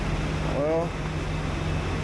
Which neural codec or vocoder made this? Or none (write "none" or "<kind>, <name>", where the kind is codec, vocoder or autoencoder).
none